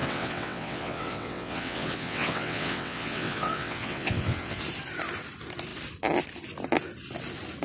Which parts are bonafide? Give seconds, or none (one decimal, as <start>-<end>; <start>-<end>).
4.6-7.6